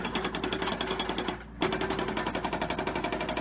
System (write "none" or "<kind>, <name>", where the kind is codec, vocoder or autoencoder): none